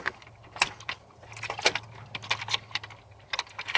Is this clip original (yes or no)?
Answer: yes